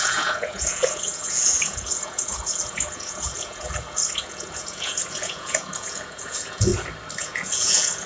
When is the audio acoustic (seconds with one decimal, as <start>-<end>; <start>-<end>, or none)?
6.7-7.2